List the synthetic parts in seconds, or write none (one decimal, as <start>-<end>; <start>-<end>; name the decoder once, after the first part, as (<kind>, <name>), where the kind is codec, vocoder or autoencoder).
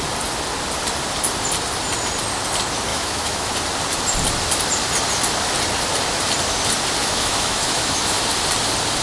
2.9-3.5 (autoencoder, DAC-VAE); 7.0-8.2